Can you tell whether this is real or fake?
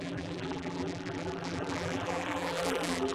fake